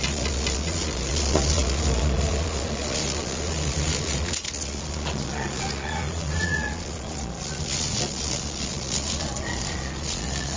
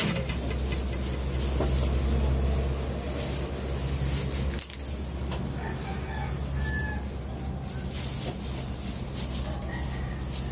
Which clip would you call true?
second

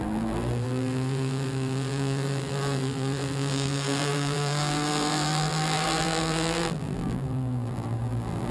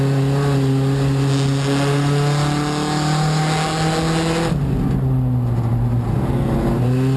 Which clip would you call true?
second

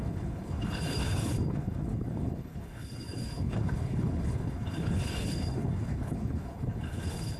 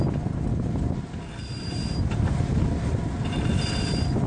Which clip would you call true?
second